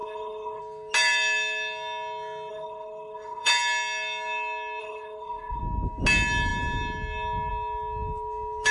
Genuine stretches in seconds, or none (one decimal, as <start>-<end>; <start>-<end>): 0.6-2.5; 3.5-4.8; 5.6-8.7